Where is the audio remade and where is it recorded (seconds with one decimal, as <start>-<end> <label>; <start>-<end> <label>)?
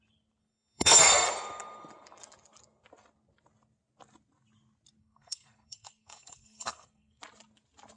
0.0-0.4 recorded; 0.4-1.3 remade; 1.3-5.0 recorded; 5.0-7.2 remade; 7.2-8.0 recorded